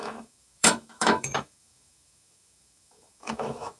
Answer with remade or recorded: remade